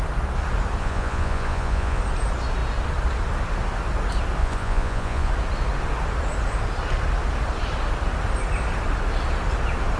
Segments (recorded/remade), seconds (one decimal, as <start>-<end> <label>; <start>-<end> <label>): 0.0-0.8 recorded; 0.8-2.0 remade; 2.0-4.4 recorded; 4.4-5.3 remade; 5.3-10.0 recorded